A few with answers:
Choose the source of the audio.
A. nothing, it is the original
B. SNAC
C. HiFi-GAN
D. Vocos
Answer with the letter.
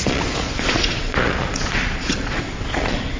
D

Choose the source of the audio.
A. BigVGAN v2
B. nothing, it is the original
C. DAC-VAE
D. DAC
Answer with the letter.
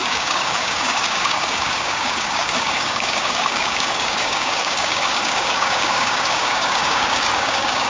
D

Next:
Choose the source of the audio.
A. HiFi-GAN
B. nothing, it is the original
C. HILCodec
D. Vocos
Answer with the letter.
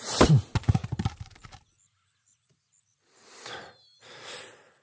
B